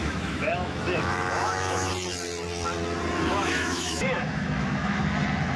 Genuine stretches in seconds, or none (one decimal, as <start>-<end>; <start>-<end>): 1.9-3.3; 5.0-5.6